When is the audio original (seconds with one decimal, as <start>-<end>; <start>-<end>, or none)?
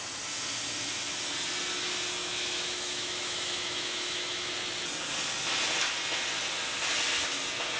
0.0-2.2; 4.5-7.8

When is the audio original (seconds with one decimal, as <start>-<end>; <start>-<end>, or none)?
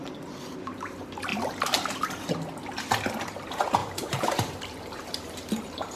0.0-3.8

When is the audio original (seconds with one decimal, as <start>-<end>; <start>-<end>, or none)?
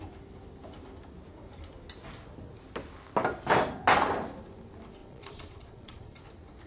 0.0-5.0; 6.2-6.7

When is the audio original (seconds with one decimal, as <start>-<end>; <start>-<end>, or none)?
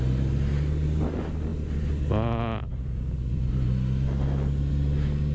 0.0-5.3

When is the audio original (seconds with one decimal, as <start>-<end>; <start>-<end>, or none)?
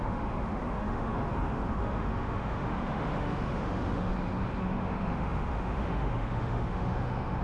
4.1-4.6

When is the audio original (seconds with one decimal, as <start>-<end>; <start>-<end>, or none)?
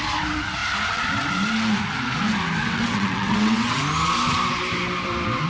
0.0-2.6; 3.8-5.5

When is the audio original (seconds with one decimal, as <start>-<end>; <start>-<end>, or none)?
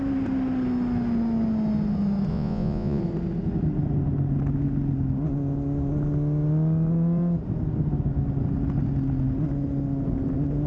0.0-2.3; 3.0-10.7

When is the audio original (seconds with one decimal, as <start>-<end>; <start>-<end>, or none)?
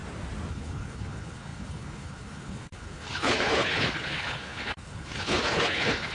0.0-0.5